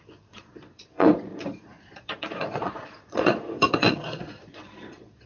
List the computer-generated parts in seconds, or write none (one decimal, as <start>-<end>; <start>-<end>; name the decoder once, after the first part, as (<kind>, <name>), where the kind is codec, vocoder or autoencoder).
0.0-5.3 (vocoder, Vocos)